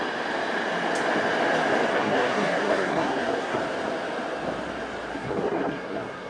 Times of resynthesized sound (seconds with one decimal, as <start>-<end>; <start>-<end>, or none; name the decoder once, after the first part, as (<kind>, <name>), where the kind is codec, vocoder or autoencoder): 1.9-3.6 (codec, SNAC); 5.1-6.3